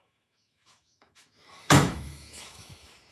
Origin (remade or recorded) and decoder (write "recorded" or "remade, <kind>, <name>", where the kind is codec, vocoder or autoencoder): remade, autoencoder, DAC-VAE